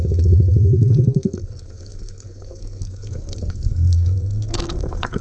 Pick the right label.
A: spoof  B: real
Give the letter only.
A